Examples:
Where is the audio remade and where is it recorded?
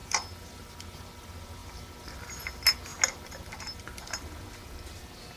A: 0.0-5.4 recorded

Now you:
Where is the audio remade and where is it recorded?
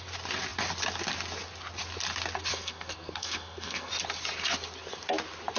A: 0.0-2.5 recorded; 2.5-3.9 remade; 3.9-5.6 recorded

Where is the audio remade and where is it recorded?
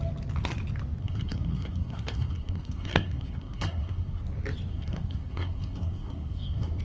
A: 0.0-1.0 recorded; 1.0-4.2 remade; 4.2-4.7 recorded; 4.7-6.8 remade